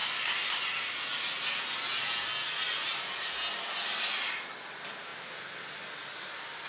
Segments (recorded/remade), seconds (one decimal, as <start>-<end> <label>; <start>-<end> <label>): 0.0-6.7 recorded